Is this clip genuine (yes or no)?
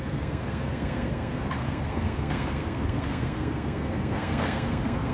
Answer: no